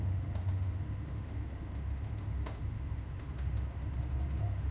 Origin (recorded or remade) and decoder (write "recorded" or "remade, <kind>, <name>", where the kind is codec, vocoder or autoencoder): remade, autoencoder, DAC-VAE